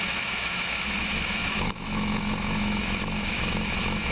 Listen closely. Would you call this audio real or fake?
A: fake